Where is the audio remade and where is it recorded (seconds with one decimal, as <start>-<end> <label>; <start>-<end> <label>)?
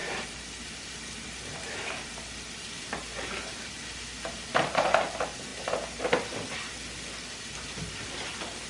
0.0-5.5 remade; 5.5-7.4 recorded; 7.4-8.7 remade